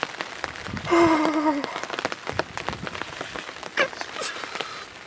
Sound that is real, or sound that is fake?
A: real